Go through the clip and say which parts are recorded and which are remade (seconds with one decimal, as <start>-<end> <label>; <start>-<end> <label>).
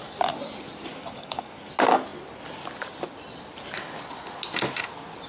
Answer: 0.0-0.9 recorded; 0.9-1.7 remade; 1.7-5.3 recorded